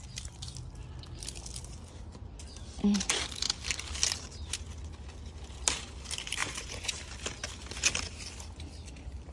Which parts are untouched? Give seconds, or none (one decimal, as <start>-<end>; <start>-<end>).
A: 0.0-6.4; 6.9-9.3